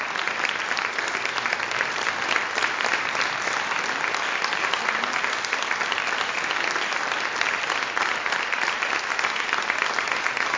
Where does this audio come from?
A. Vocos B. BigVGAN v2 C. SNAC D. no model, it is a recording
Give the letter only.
B